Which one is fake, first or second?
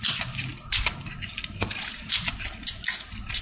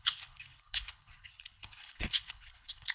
second